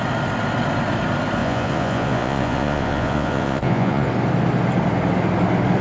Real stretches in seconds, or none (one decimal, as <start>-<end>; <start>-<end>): 0.0-1.4; 4.1-5.8